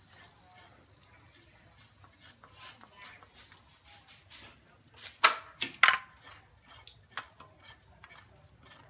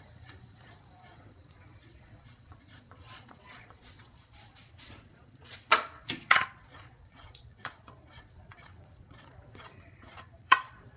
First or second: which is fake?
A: second